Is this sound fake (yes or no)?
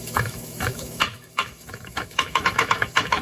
yes